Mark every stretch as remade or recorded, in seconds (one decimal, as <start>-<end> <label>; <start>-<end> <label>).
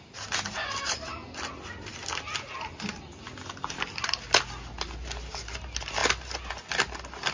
0.0-7.3 recorded